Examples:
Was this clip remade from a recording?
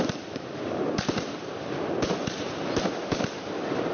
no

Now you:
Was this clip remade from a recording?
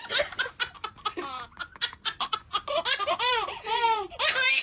no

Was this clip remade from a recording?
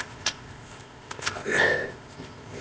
yes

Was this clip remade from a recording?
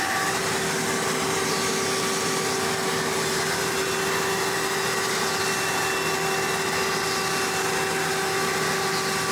no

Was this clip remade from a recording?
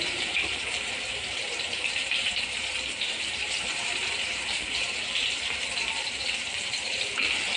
yes